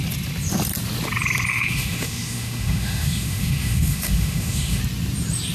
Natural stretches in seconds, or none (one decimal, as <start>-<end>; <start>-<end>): 0.0-1.5; 4.8-5.5